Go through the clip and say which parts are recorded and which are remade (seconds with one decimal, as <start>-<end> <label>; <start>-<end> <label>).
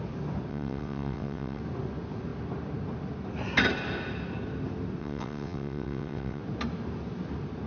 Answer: 0.0-0.5 recorded; 0.5-1.6 remade; 1.6-5.0 recorded; 5.0-6.4 remade; 6.4-7.7 recorded